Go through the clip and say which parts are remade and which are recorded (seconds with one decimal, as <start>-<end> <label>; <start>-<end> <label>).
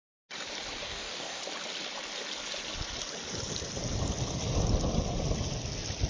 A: 0.0-0.8 recorded; 0.8-1.4 remade; 1.4-6.1 recorded